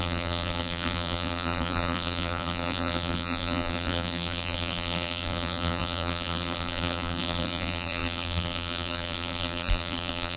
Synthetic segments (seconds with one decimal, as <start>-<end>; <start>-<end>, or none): 0.0-10.4